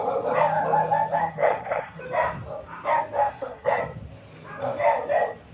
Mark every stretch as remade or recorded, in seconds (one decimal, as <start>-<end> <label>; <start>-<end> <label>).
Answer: 0.0-1.2 recorded; 1.2-2.0 remade; 2.0-3.3 recorded; 3.3-3.8 remade; 3.8-5.5 recorded